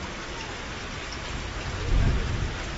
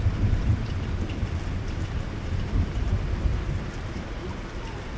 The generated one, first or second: second